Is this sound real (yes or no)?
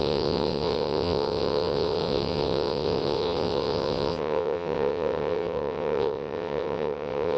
no